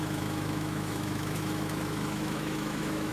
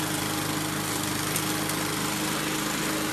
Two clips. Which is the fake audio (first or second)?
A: first